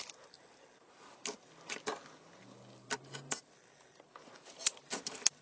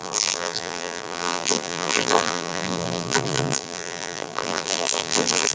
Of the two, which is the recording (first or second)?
first